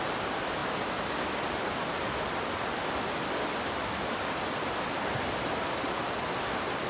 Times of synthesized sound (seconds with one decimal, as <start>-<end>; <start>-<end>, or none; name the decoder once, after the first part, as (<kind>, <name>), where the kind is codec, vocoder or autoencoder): none